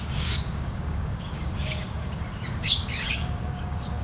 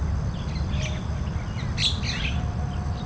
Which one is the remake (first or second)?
first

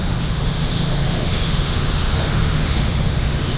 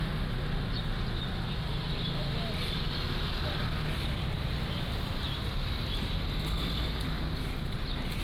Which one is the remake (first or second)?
first